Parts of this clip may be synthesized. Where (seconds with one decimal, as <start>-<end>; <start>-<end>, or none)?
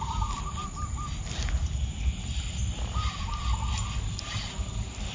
none